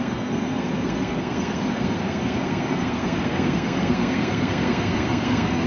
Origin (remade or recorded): remade